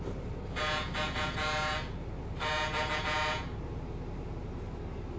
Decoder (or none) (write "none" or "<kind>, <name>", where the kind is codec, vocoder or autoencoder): none